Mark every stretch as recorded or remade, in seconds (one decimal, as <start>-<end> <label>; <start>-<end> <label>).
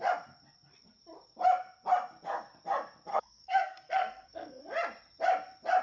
0.0-3.1 recorded; 3.1-4.6 remade; 4.6-5.8 recorded